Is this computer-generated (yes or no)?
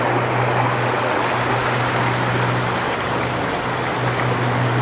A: no